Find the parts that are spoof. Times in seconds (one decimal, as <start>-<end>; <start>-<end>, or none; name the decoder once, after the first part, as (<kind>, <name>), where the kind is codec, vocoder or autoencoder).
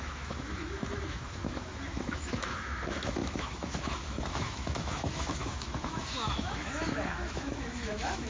0.0-8.3 (autoencoder, DAC-VAE)